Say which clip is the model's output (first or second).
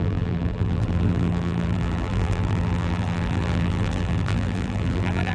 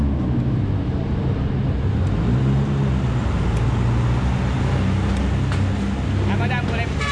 first